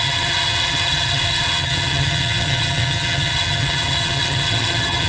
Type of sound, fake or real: fake